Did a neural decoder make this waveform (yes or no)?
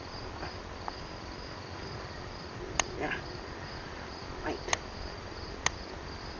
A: no